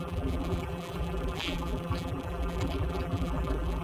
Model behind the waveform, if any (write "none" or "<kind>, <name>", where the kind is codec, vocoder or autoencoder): vocoder, BigVGAN v2